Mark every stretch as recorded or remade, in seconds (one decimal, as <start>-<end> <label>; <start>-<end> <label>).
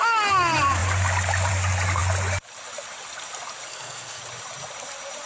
0.0-3.7 recorded; 3.7-4.2 remade; 4.2-5.3 recorded